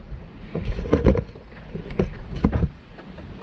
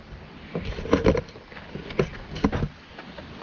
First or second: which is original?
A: second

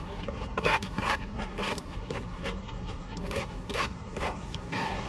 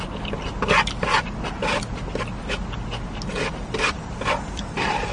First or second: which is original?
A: second